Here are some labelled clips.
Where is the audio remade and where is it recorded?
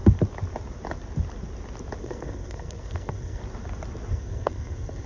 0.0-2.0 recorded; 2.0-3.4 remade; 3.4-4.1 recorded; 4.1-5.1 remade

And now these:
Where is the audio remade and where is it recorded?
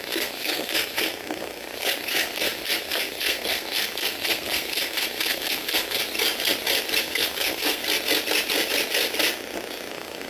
0.0-6.0 remade; 6.0-7.0 recorded; 7.0-7.8 remade; 7.8-9.9 recorded; 9.9-10.3 remade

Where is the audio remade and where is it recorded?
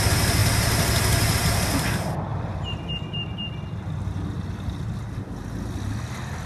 0.0-6.5 recorded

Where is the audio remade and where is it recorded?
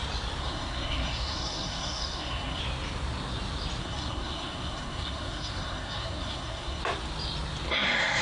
0.0-0.4 recorded; 0.4-2.6 remade; 2.6-3.8 recorded; 3.8-6.8 remade; 6.8-8.2 recorded